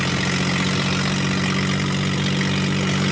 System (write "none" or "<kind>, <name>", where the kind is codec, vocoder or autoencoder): none